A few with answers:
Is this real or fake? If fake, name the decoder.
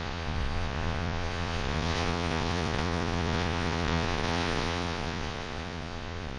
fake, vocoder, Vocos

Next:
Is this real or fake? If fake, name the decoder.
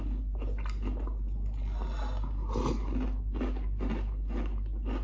real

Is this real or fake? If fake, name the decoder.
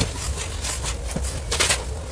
real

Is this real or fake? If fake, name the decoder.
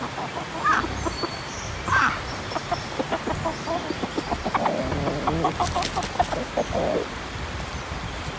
real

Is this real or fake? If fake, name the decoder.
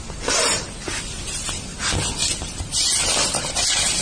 real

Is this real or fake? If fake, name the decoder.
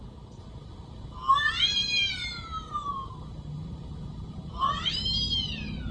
real